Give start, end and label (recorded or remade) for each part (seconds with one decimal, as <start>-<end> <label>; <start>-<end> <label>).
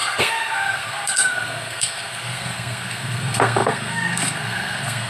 0.0-5.1 remade